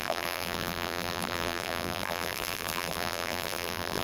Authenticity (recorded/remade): remade